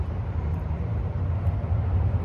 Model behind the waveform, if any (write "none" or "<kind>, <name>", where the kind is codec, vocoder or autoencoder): vocoder, BigVGAN v2